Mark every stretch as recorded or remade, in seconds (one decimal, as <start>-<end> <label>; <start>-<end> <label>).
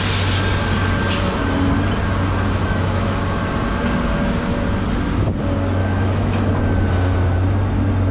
0.0-2.6 recorded; 2.6-3.2 remade; 3.2-5.8 recorded; 5.8-6.5 remade; 6.5-8.1 recorded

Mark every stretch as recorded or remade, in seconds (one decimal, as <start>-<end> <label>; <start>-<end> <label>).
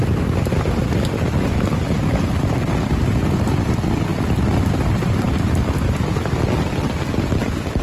0.0-7.8 recorded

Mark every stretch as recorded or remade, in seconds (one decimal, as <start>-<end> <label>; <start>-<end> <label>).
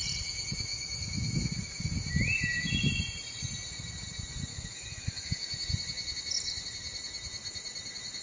0.0-0.7 recorded; 0.7-1.5 remade; 1.5-4.5 recorded; 4.5-5.3 remade; 5.3-8.2 recorded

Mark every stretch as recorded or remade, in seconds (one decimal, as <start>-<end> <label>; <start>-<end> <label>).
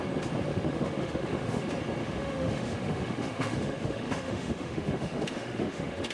0.0-0.5 recorded; 0.5-1.6 remade; 1.6-2.0 recorded; 2.0-6.1 remade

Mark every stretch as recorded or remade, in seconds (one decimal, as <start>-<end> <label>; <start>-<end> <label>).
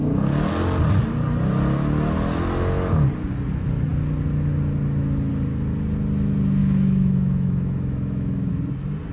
0.0-6.6 recorded; 6.6-8.5 remade; 8.5-9.1 recorded